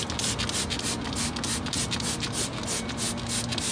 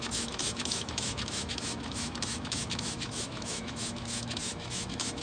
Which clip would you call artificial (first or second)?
second